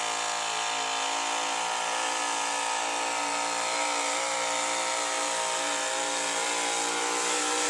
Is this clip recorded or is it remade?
recorded